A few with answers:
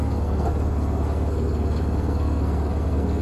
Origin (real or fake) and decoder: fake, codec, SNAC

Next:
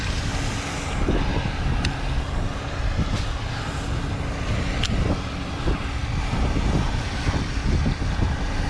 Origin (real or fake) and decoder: real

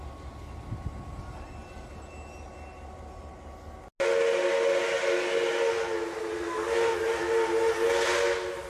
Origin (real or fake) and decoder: real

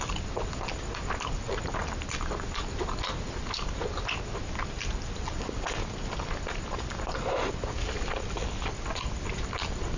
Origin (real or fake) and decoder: real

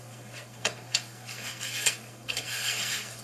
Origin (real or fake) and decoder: fake, codec, SNAC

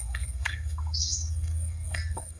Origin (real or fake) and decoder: fake, codec, SNAC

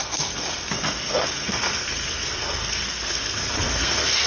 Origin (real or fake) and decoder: fake, codec, SNAC